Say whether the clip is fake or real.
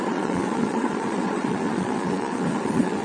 fake